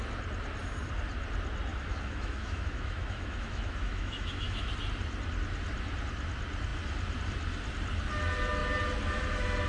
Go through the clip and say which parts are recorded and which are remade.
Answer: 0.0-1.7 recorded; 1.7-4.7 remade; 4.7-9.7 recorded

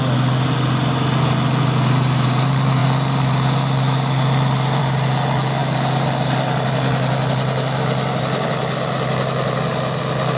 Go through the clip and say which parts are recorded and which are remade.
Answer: 0.0-10.4 recorded

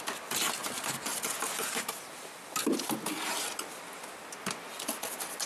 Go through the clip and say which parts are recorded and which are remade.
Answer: 0.0-5.5 recorded

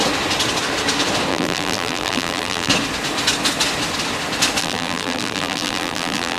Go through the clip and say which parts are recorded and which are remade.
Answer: 0.0-1.3 recorded; 1.3-2.7 remade; 2.7-4.6 recorded; 4.6-6.4 remade

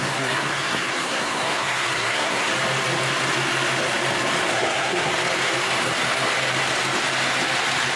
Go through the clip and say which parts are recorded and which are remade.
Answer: 0.0-2.5 remade; 2.5-4.5 recorded; 4.5-5.1 remade; 5.1-8.0 recorded

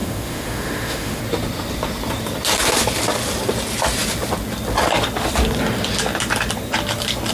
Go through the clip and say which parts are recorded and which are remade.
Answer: 0.0-1.2 remade; 1.2-7.3 recorded

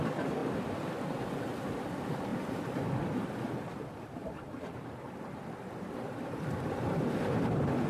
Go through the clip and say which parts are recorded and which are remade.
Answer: 0.0-0.4 remade; 0.4-1.8 recorded; 1.8-7.9 remade

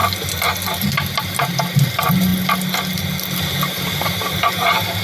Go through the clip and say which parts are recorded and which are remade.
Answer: 0.0-5.0 recorded